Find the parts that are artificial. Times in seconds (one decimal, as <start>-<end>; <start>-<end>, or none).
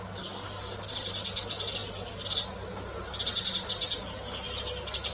none